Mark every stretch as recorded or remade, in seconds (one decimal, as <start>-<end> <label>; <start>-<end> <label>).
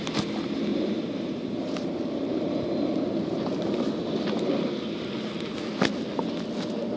0.0-0.7 recorded; 0.7-4.8 remade; 4.8-7.0 recorded